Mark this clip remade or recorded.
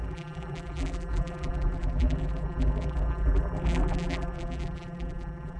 remade